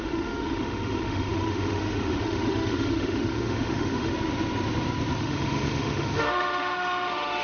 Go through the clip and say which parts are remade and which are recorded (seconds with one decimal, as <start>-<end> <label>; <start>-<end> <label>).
0.0-4.1 remade; 4.1-5.2 recorded; 5.2-7.4 remade